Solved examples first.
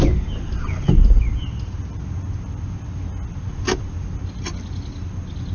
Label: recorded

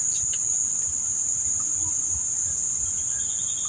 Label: recorded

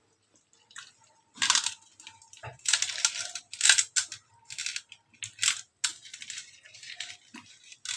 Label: recorded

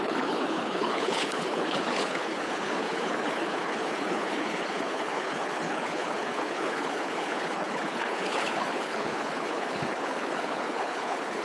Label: remade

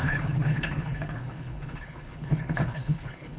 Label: remade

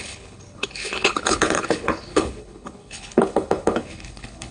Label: remade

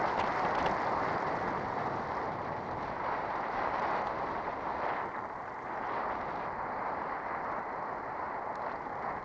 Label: recorded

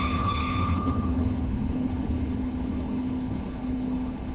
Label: remade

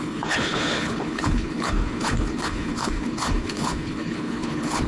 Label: remade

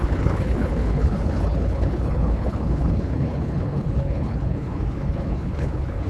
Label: remade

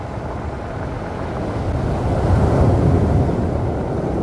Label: recorded